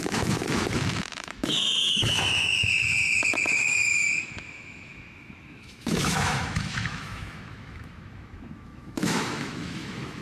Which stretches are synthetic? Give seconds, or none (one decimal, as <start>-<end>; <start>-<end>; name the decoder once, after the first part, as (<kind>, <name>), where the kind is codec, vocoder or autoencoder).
0.0-10.2 (autoencoder, DAC-VAE)